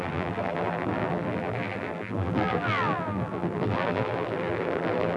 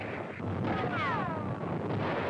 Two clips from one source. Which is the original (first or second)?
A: second